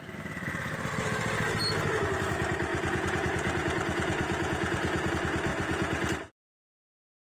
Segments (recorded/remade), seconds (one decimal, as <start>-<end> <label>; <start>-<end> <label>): 0.0-2.7 recorded; 2.7-5.1 remade; 5.1-5.5 recorded; 5.5-6.1 remade; 6.1-7.4 recorded